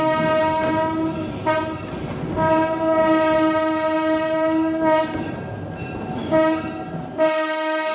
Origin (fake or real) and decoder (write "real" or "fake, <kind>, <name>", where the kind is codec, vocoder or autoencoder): real